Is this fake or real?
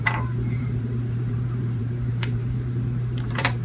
fake